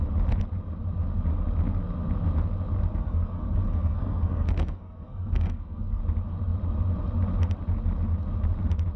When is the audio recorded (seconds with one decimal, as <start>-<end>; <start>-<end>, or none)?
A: 0.0-2.9; 6.0-9.0